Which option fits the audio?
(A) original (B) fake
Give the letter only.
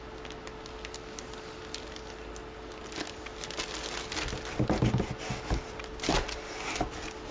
A